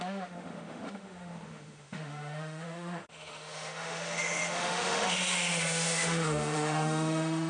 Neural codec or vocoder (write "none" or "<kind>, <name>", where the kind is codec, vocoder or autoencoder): autoencoder, DAC-VAE